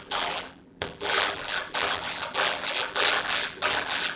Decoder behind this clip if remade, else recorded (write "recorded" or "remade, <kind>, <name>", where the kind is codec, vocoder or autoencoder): remade, vocoder, BigVGAN v2